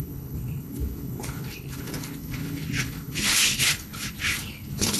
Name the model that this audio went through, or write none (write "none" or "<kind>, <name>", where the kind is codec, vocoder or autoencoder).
codec, HILCodec